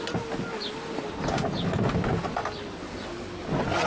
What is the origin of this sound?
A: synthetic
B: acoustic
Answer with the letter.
B